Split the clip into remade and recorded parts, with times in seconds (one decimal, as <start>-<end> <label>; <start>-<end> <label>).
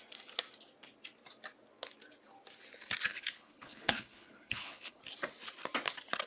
0.0-3.1 recorded; 3.1-5.0 remade; 5.0-6.3 recorded